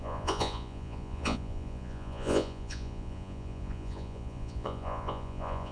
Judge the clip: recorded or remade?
remade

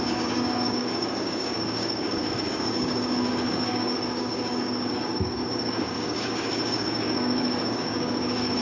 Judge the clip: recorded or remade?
remade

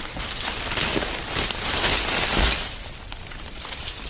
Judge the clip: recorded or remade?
recorded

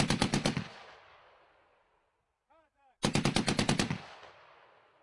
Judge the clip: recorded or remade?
recorded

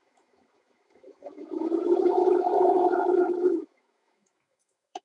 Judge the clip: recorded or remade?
remade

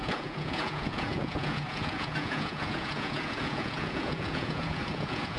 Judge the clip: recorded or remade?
remade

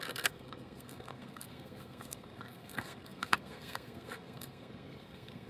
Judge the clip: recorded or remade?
remade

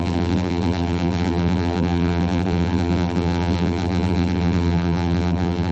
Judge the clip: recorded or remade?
remade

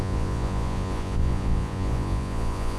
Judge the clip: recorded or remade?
remade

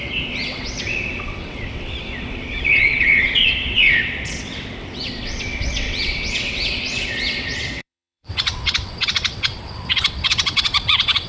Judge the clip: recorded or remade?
remade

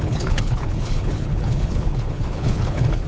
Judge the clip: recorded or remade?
remade